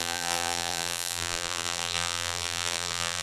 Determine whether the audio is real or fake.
fake